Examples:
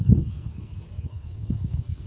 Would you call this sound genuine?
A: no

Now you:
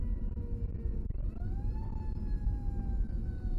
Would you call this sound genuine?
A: yes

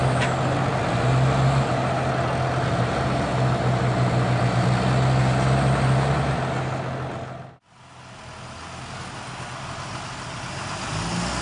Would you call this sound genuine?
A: yes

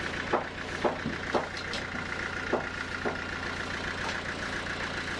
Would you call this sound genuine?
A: yes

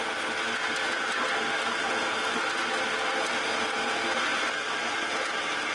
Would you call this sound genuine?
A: yes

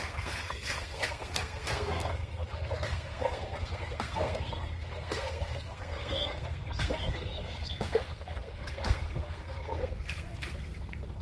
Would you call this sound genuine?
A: no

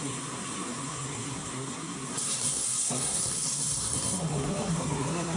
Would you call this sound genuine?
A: no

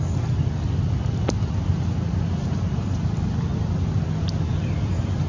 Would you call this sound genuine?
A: yes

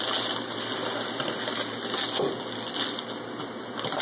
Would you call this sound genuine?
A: yes